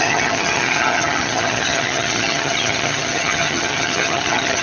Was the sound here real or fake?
fake